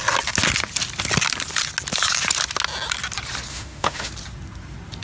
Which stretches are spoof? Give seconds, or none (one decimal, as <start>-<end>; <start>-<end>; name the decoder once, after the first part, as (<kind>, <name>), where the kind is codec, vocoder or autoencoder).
3.5-4.1 (autoencoder, DAC-VAE)